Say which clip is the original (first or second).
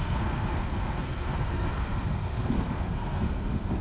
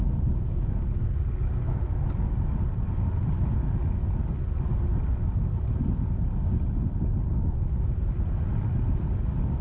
second